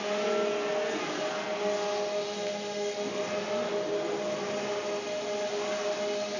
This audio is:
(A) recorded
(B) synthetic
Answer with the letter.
A